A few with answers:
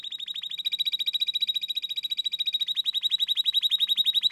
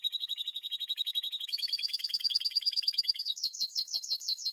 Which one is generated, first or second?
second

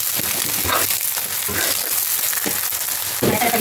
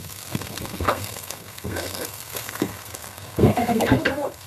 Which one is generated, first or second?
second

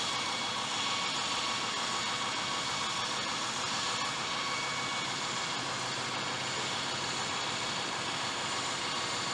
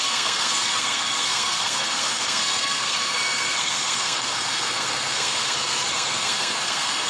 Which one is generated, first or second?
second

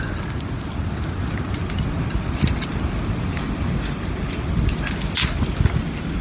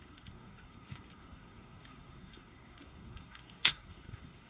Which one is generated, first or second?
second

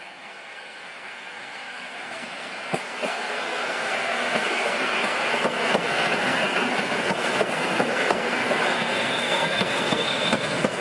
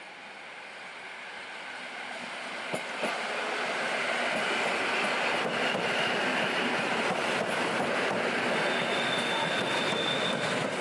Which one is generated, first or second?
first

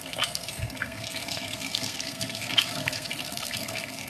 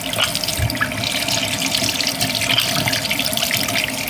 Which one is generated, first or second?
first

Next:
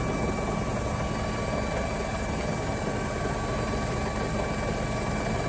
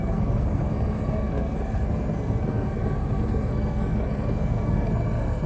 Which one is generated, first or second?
second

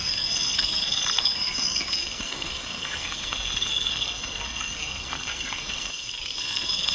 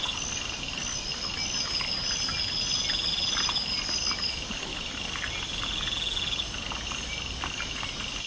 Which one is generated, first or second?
first